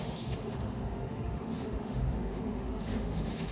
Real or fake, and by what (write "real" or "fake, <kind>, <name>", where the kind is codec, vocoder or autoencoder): fake, autoencoder, DAC-VAE